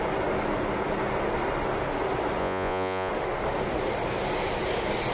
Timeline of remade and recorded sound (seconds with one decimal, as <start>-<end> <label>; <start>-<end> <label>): 0.0-2.4 recorded; 2.4-3.1 remade; 3.1-5.1 recorded